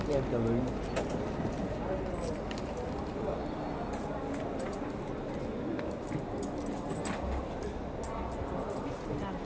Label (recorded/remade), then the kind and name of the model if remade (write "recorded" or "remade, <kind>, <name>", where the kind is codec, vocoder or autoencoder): recorded